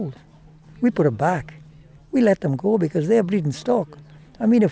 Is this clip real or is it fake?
real